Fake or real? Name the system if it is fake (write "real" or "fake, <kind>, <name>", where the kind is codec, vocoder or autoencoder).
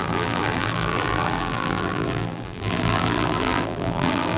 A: fake, vocoder, BigVGAN v2